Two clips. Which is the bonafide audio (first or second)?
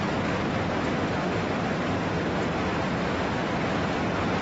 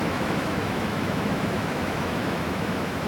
first